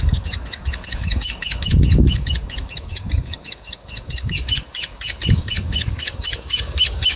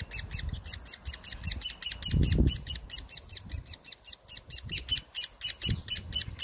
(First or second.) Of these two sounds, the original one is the second